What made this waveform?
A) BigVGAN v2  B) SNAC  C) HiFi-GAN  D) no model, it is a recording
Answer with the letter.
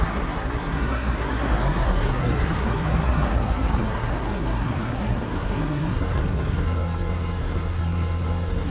B